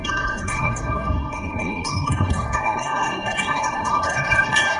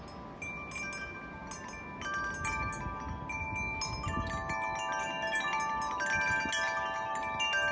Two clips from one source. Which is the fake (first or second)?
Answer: first